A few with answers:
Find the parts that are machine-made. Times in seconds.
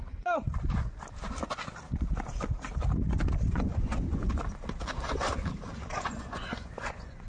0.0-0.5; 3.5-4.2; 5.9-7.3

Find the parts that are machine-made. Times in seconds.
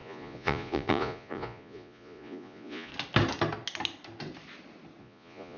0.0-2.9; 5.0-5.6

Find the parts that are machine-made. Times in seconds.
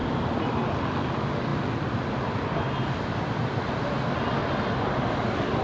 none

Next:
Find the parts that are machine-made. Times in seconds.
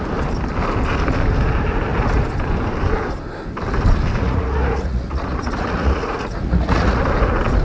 4.2-7.0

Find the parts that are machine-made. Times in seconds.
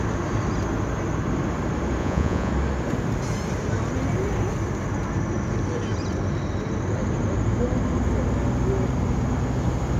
2.0-2.5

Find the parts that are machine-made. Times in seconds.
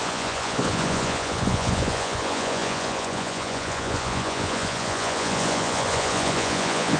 0.0-7.0